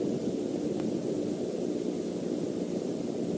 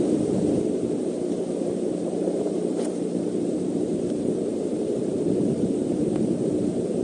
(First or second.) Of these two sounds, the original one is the first